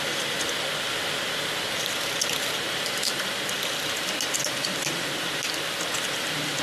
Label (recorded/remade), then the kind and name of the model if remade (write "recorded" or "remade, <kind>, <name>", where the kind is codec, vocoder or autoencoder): recorded